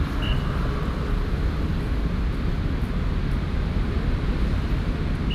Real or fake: real